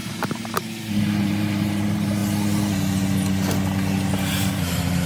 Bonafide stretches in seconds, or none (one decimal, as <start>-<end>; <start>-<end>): 2.2-4.1